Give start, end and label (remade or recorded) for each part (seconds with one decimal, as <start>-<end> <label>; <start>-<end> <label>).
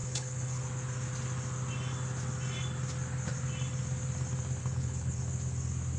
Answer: 0.0-0.6 remade; 0.6-4.6 recorded; 4.6-5.2 remade; 5.2-6.0 recorded